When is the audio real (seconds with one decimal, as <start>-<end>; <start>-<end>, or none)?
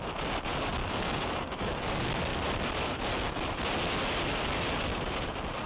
0.0-0.8; 1.9-5.7